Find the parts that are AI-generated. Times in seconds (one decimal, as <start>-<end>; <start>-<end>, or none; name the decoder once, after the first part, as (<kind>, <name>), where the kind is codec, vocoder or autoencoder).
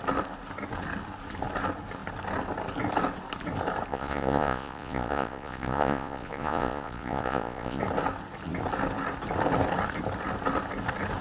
3.9-7.8 (vocoder, Vocos)